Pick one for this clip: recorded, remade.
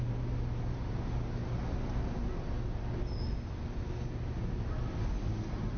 recorded